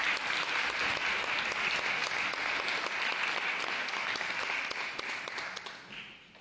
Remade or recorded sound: recorded